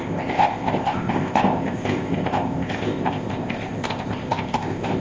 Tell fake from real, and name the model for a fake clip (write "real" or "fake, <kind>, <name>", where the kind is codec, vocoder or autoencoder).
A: fake, codec, ZipCodec